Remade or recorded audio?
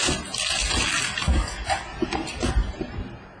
recorded